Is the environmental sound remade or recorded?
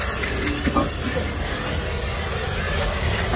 recorded